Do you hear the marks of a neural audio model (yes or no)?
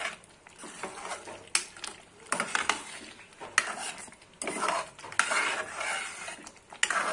no